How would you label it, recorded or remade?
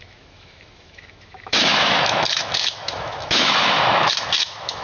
remade